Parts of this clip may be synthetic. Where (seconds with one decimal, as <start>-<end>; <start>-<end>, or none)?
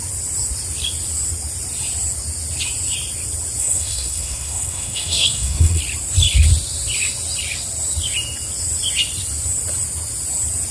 3.6-5.8